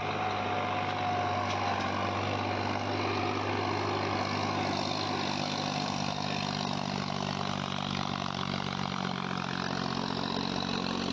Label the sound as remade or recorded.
recorded